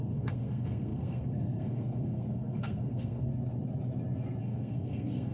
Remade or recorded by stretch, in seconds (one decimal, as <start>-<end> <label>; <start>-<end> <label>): 0.0-3.3 remade; 3.3-4.4 recorded; 4.4-5.3 remade